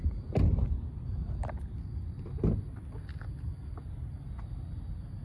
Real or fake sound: real